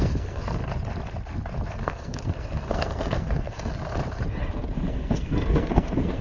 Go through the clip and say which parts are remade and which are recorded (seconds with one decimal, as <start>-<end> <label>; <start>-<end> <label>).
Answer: 0.0-0.6 remade; 0.6-1.7 recorded; 1.7-3.7 remade; 3.7-4.9 recorded; 4.9-6.2 remade